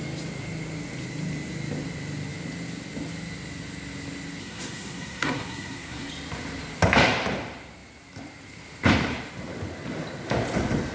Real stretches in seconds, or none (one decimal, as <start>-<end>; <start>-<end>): 0.0-4.4; 6.1-10.9